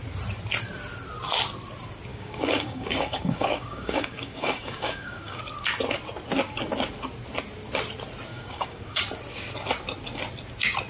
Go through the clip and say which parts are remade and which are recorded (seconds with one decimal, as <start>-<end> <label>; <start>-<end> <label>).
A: 0.0-2.1 recorded; 2.1-5.4 remade; 5.4-8.3 recorded; 8.3-9.0 remade; 9.0-10.9 recorded